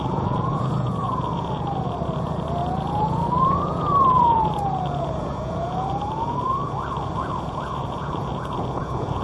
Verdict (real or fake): fake